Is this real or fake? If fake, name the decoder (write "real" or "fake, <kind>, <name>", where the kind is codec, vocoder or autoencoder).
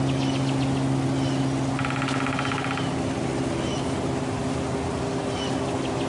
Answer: real